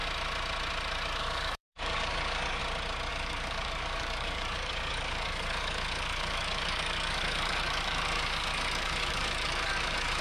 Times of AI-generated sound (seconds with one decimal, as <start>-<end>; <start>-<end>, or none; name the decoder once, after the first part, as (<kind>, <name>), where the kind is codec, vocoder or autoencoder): 1.2-2.6 (codec, DAC); 3.1-10.2

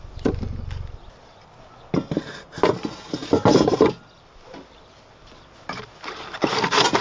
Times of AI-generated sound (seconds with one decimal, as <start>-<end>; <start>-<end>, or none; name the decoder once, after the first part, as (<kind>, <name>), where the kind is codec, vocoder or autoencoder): none

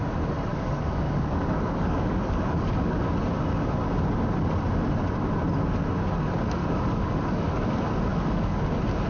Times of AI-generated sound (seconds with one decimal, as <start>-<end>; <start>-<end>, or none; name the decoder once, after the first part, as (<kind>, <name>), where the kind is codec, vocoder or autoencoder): 0.5-3.1 (codec, DAC); 6.6-7.7; 8.1-8.7

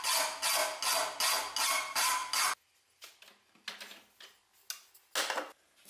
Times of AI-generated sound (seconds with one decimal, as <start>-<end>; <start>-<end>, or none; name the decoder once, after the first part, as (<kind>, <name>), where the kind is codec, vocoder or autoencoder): none

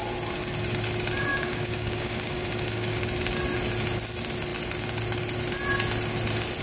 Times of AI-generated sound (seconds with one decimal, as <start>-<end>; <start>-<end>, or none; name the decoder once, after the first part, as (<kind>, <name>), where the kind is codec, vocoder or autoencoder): 1.3-3.0 (codec, DAC)

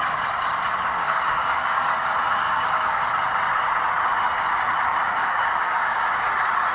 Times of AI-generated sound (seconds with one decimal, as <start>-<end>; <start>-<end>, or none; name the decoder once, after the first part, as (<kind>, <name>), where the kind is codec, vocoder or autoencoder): 1.0-1.9 (codec, DAC); 2.4-3.0; 5.2-6.3